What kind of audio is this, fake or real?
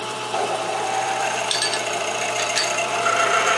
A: fake